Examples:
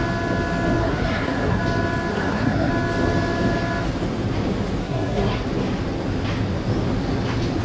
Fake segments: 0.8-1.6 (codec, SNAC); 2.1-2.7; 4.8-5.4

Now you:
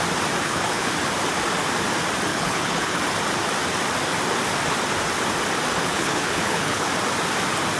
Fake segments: 0.4-0.9 (codec, HILCodec); 2.3-3.0; 5.9-6.9

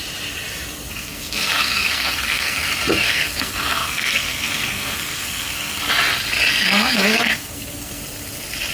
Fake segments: 0.9-5.8 (codec, SNAC); 6.5-8.0

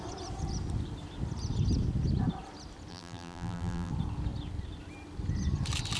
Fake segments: 2.9-3.9 (vocoder, BigVGAN v2)

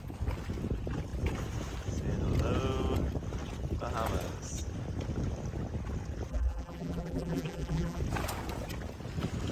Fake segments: 6.3-8.0 (vocoder, BigVGAN v2)

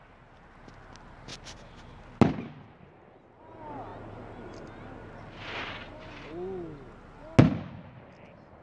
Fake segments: none